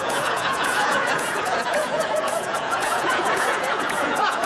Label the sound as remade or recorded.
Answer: remade